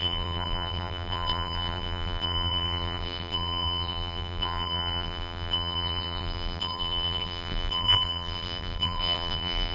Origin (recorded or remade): remade